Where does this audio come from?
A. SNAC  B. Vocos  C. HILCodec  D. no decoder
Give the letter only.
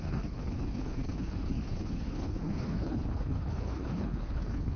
C